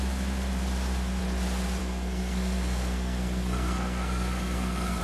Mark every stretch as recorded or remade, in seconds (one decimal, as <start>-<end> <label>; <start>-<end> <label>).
0.0-1.8 recorded; 1.8-5.0 remade